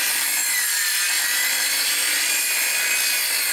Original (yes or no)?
no